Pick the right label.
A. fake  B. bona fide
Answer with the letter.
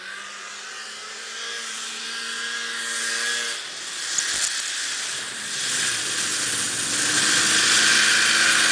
B